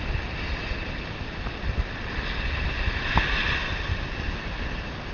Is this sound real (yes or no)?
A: yes